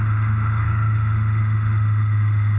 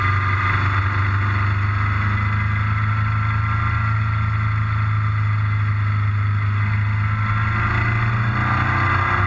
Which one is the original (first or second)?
second